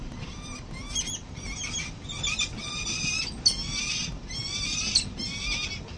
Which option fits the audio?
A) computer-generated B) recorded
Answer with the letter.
B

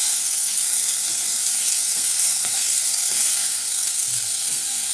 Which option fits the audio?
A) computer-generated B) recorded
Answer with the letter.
A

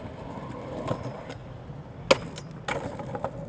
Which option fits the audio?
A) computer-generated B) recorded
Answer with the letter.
B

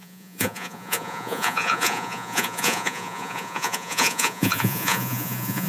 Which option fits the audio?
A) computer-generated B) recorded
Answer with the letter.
A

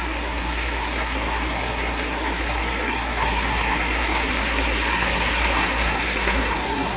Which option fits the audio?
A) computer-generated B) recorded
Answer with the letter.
A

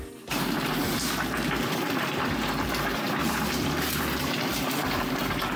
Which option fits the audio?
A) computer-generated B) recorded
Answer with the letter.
A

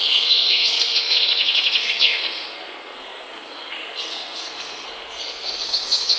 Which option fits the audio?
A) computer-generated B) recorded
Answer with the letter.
A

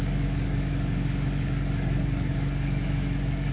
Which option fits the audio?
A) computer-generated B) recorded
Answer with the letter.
A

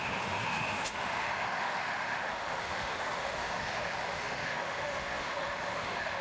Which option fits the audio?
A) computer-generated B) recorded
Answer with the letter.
A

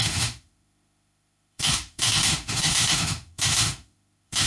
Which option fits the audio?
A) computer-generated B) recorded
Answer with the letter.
A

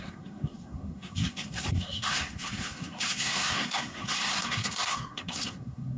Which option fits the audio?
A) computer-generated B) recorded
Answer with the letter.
A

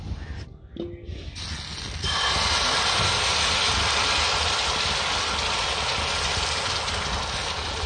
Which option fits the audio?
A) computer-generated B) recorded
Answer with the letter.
B